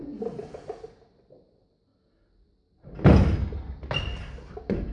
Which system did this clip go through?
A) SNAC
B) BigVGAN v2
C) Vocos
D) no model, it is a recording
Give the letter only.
D